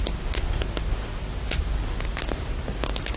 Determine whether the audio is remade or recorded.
recorded